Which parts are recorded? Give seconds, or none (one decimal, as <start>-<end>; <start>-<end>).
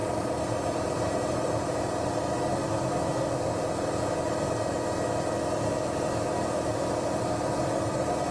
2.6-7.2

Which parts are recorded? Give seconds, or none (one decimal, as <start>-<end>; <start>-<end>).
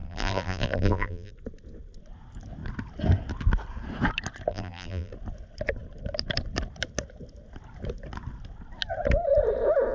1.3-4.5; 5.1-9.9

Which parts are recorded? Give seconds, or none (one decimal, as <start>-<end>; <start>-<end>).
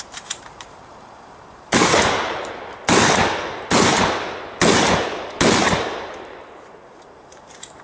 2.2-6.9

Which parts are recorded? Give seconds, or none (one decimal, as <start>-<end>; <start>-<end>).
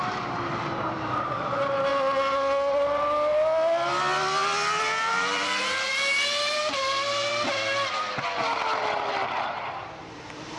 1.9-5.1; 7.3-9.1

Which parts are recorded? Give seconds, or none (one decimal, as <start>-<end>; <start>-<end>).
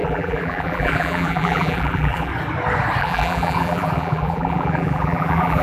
2.3-3.0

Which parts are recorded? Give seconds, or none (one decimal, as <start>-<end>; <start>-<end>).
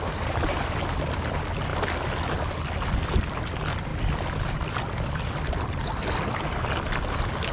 0.0-7.5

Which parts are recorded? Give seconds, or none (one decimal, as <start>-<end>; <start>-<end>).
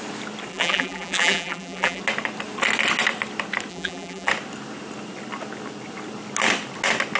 0.0-0.5; 2.0-3.7; 4.3-7.2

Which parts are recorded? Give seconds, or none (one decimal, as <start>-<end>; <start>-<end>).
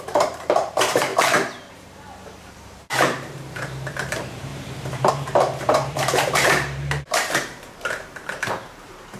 1.1-1.7